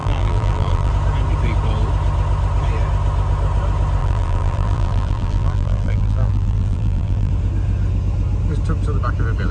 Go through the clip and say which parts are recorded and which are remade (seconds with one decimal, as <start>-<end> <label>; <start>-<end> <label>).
0.0-0.9 remade; 0.9-4.0 recorded; 4.0-7.3 remade; 7.3-9.5 recorded